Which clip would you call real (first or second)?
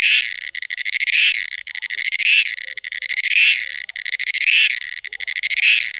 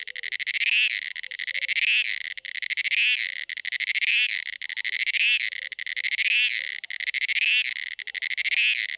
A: second